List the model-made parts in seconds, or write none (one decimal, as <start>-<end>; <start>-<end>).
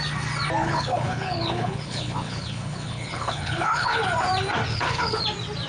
0.6-4.0; 4.7-5.2